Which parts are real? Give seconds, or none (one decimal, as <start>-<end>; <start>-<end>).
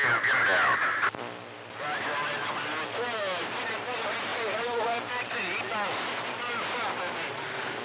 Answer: 0.0-4.3; 6.9-7.8